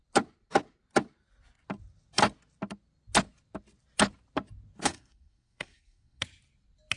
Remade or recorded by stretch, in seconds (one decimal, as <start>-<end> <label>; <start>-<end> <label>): 0.0-4.8 recorded; 4.8-6.2 remade; 6.2-7.0 recorded

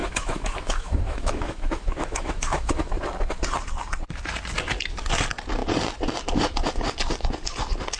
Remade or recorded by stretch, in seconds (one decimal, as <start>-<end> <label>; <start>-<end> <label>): 0.0-3.0 remade; 3.0-8.0 recorded

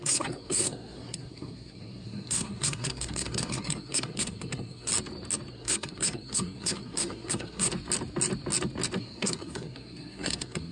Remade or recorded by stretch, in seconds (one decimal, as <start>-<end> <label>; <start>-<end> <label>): 0.0-4.9 remade; 4.9-5.5 recorded; 5.5-7.7 remade; 7.7-9.0 recorded; 9.0-10.7 remade

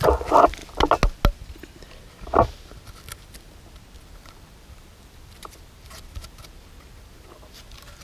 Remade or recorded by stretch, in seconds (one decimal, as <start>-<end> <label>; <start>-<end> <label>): 0.0-0.6 remade; 0.6-4.1 recorded; 4.1-8.0 remade